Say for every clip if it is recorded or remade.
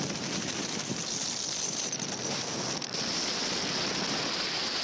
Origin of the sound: remade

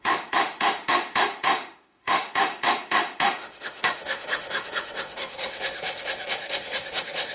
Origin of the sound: remade